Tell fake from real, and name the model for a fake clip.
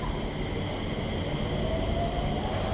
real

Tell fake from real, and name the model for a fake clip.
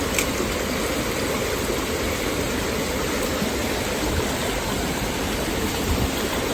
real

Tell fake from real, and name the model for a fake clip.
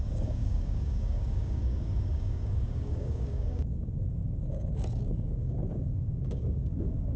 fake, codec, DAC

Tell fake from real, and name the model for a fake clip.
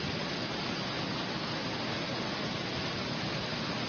real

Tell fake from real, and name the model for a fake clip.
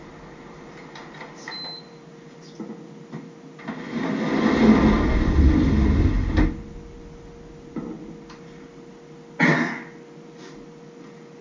real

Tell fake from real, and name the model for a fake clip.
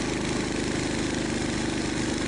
real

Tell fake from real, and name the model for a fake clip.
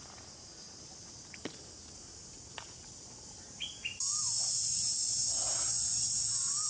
real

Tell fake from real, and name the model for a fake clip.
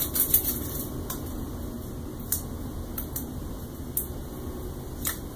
real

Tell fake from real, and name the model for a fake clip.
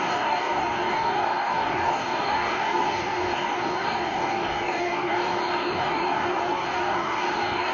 fake, codec, DAC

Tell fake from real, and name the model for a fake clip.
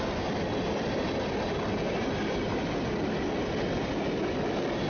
real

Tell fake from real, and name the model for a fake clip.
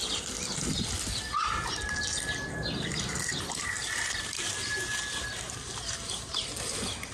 real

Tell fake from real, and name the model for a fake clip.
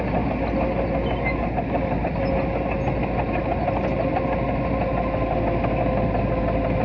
real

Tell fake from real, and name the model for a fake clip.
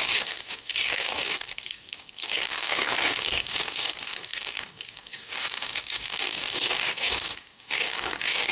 fake, codec, DAC